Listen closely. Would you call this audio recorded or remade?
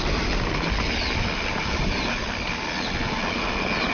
recorded